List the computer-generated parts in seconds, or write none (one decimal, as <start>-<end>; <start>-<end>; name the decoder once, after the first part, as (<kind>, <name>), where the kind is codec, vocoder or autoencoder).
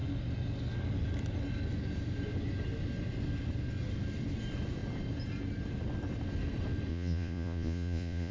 6.9-8.3 (vocoder, Vocos)